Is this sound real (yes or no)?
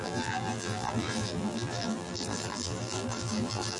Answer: no